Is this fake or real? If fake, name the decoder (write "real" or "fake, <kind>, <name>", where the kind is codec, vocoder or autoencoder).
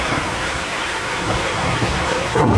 fake, codec, SNAC